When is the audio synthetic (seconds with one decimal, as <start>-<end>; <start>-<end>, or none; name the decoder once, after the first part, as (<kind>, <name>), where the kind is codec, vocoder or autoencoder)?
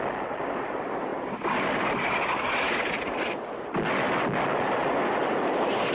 none